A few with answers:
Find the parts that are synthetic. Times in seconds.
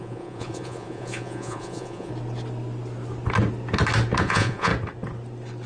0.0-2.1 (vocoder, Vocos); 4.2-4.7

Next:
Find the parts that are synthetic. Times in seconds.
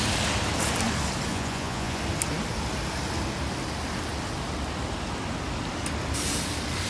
1.3-2.0 (vocoder, Vocos)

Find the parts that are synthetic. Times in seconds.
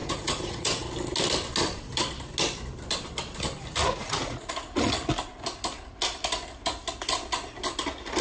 0.0-0.8 (vocoder, Vocos); 3.8-4.5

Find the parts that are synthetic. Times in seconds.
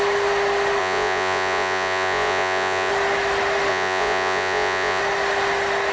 0.8-2.9 (vocoder, Vocos); 3.7-5.0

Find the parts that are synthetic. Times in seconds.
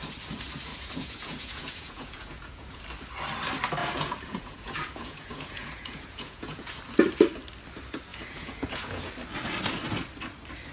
0.7-2.8 (vocoder, Vocos); 3.8-6.8; 8.1-9.1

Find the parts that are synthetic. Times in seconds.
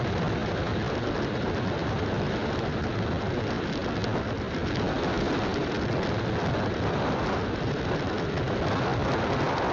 none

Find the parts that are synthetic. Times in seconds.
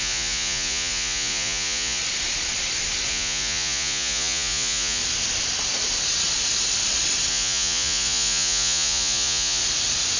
0.0-2.0 (vocoder, Vocos); 3.1-5.0; 7.3-9.6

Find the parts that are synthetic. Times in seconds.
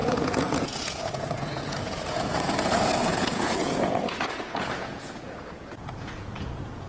0.0-6.9 (vocoder, Vocos)